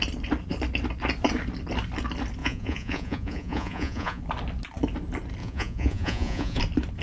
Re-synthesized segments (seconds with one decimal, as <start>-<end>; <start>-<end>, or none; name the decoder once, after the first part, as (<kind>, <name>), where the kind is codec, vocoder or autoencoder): 2.4-4.2 (vocoder, Vocos); 5.4-6.6